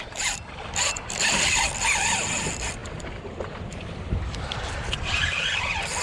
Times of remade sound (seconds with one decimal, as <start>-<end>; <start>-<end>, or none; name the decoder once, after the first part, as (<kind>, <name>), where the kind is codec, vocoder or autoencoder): 0.0-6.0 (vocoder, BigVGAN v2)